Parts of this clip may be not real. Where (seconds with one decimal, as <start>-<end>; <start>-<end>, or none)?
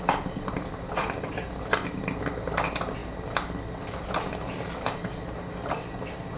none